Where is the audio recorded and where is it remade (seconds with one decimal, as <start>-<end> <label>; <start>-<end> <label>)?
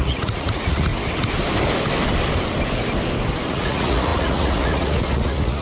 0.0-0.9 remade; 0.9-3.5 recorded; 3.5-5.6 remade